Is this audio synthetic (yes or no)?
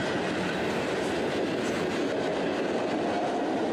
no